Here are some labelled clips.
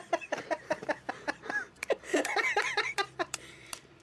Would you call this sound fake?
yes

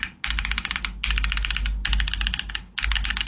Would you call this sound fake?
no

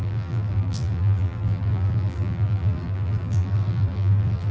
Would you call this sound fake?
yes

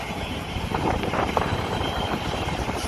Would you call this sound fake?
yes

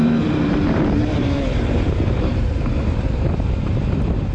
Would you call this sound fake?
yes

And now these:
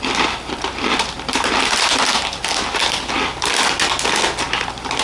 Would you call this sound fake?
no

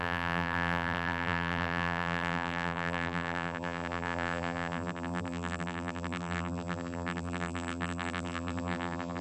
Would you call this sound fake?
yes